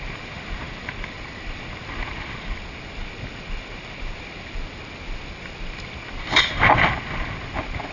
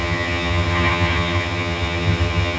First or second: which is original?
first